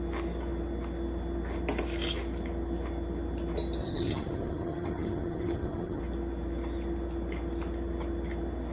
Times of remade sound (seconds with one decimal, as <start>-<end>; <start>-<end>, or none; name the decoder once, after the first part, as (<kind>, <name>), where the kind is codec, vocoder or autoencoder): 3.8-6.0 (vocoder, HiFi-GAN)